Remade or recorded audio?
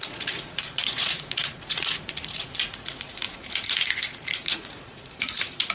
remade